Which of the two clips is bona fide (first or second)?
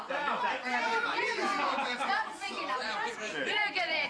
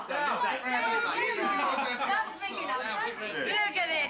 second